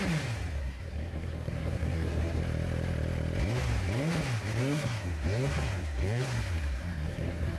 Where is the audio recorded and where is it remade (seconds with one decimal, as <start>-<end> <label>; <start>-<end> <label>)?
0.0-0.6 recorded; 0.6-2.4 remade; 2.4-4.6 recorded; 4.6-7.6 remade